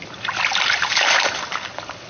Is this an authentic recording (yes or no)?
yes